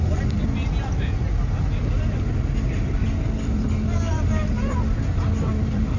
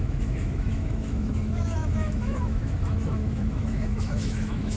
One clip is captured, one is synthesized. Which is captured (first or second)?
first